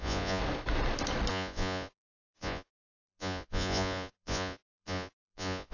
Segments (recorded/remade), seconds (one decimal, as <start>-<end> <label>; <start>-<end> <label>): 0.0-0.4 remade; 0.4-1.3 recorded; 1.3-5.7 remade